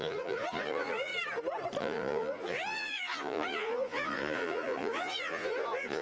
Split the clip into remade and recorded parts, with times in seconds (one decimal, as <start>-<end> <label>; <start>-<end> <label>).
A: 0.0-1.1 remade; 1.1-1.8 recorded; 1.8-6.0 remade